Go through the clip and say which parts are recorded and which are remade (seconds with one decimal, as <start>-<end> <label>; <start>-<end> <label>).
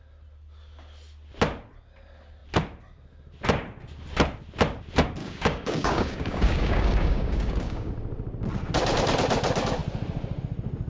0.0-5.2 recorded; 5.2-7.9 remade; 7.9-10.9 recorded